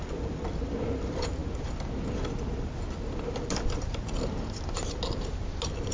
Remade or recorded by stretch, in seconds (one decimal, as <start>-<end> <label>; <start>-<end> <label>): 0.0-5.9 recorded